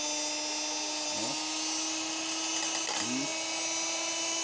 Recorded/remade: recorded